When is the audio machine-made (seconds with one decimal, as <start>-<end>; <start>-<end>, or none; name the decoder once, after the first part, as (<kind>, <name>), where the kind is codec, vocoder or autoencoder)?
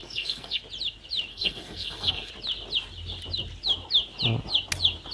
0.0-0.6 (codec, SNAC); 1.3-2.3